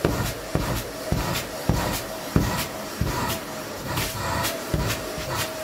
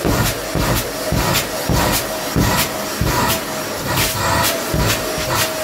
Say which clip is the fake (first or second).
first